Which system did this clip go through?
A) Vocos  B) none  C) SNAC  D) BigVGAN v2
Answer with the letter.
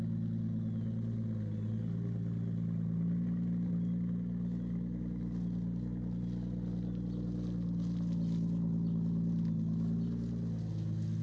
B